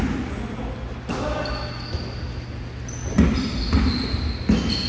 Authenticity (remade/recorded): recorded